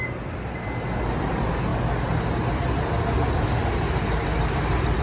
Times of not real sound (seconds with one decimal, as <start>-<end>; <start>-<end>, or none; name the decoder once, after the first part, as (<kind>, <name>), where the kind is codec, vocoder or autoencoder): none